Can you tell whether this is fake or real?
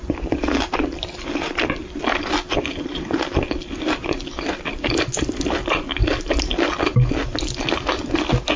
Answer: real